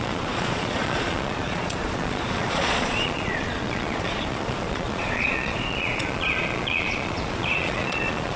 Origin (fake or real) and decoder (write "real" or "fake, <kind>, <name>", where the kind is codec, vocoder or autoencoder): fake, vocoder, Vocos